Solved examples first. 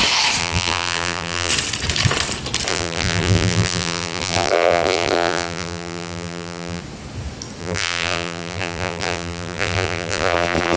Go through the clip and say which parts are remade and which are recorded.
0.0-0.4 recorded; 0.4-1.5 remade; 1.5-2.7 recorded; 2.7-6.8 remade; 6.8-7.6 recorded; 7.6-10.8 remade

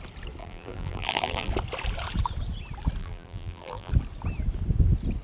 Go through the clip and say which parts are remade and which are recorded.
0.0-0.4 recorded; 0.4-1.5 remade; 1.5-3.0 recorded; 3.0-3.9 remade; 3.9-5.2 recorded

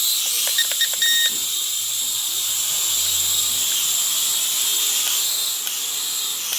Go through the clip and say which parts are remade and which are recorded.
0.0-0.5 recorded; 0.5-2.7 remade; 2.7-6.6 recorded

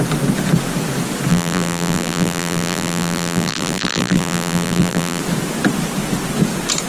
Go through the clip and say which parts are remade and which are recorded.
0.0-1.3 recorded; 1.3-5.2 remade; 5.2-6.9 recorded

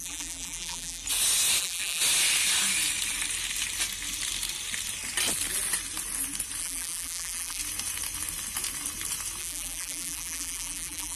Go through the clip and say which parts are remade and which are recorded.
0.0-1.0 remade; 1.0-1.6 recorded; 1.6-2.0 remade; 2.0-6.6 recorded; 6.6-7.6 remade; 7.6-9.4 recorded; 9.4-11.2 remade